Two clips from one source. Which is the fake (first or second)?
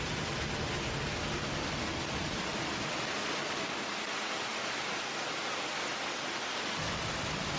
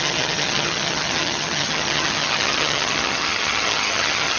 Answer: second